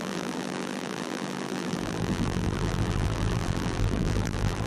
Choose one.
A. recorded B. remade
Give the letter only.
B